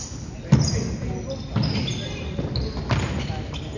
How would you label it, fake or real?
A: real